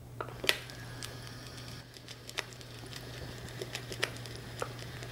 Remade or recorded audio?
remade